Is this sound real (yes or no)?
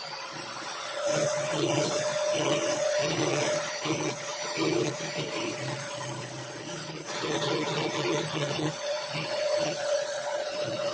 no